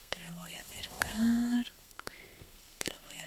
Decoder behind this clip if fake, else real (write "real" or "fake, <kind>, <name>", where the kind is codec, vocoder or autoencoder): fake, codec, SNAC